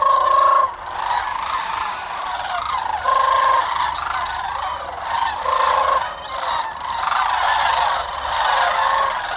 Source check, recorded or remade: recorded